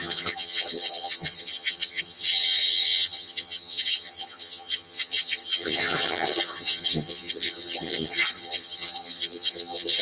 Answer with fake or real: fake